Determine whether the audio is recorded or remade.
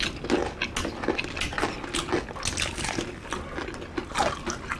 recorded